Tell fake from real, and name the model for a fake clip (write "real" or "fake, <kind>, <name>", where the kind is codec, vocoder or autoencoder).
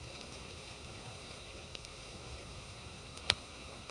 fake, codec, SNAC